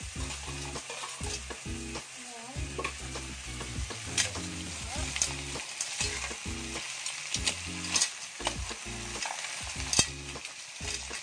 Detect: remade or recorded recorded